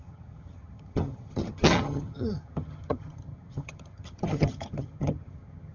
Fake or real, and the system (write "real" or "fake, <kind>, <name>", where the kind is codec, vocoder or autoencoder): fake, vocoder, HiFi-GAN